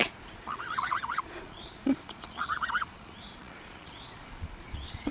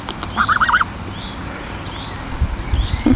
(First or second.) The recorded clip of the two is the second